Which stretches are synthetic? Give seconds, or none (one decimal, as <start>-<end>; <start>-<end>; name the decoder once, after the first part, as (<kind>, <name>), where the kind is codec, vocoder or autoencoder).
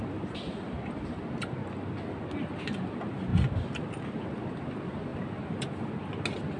none